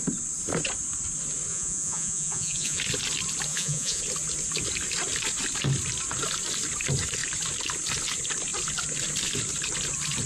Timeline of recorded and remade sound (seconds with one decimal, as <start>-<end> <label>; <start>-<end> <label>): 0.0-1.5 recorded; 1.5-2.8 remade; 2.8-3.5 recorded; 3.5-4.0 remade; 4.0-10.3 recorded